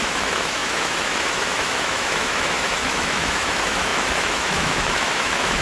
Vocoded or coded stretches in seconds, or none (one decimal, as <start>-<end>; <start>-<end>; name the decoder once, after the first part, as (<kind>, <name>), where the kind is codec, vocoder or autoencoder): 0.0-5.6 (autoencoder, DAC-VAE)